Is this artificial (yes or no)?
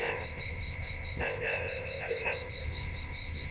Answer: yes